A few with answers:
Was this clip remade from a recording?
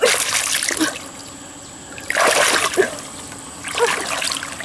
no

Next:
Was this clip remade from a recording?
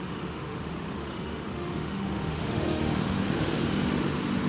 yes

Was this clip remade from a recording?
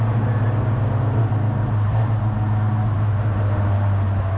no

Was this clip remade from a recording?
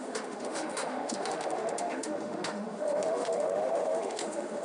yes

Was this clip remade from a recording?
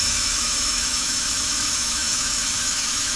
yes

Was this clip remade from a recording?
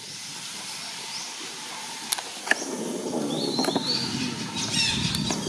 no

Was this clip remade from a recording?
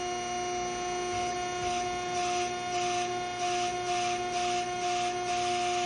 no